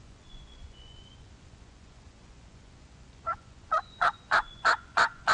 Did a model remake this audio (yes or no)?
yes